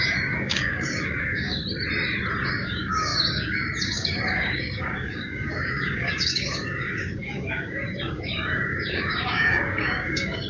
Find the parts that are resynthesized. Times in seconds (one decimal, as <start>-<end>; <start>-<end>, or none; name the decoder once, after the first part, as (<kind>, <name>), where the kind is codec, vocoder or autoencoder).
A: 0.0-1.6 (codec, DAC); 2.5-10.5